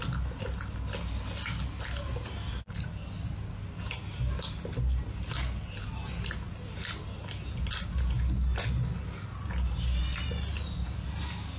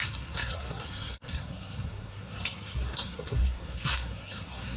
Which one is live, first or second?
first